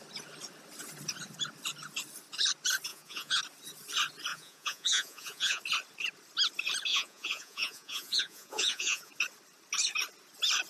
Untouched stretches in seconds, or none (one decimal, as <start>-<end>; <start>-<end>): 0.0-2.9; 3.4-4.3; 5.6-6.9; 9.1-10.7